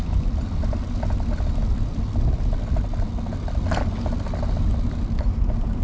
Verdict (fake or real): real